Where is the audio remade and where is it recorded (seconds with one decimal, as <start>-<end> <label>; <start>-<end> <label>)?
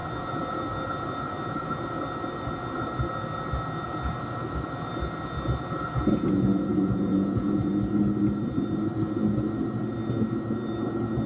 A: 0.0-6.7 recorded; 6.7-7.7 remade; 7.7-11.3 recorded